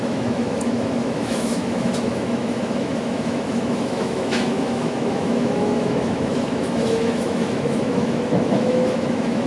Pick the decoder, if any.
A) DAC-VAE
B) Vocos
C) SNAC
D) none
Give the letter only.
A